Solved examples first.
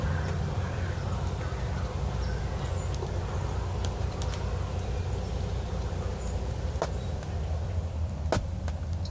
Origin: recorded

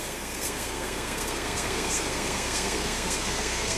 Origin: remade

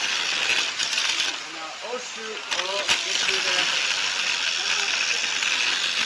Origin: recorded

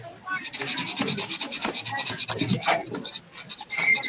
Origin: recorded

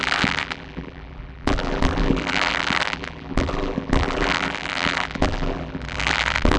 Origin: remade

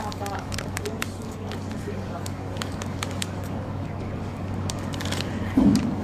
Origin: remade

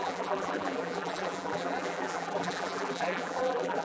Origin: remade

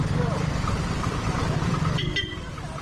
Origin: remade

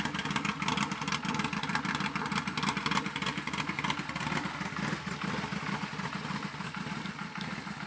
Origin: recorded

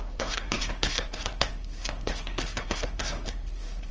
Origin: remade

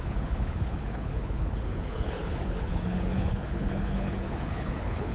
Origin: remade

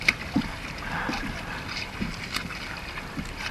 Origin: recorded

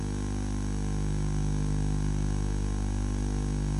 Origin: recorded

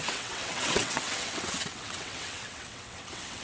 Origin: remade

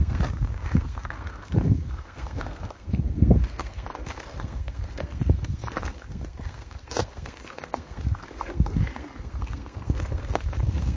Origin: remade